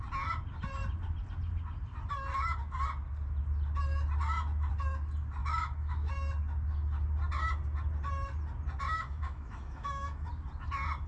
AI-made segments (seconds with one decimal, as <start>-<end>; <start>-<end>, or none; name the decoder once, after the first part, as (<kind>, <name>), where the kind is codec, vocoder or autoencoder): 5.4-6.1 (autoencoder, DAC-VAE); 8.9-10.3